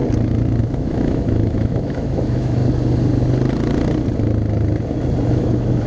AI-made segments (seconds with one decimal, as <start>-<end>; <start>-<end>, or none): 0.6-2.6; 5.3-5.9